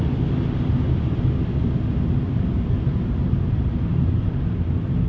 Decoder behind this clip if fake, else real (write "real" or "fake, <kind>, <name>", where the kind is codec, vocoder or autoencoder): real